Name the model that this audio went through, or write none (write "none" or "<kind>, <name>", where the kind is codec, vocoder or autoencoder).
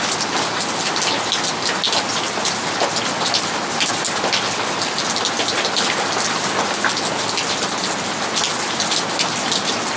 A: none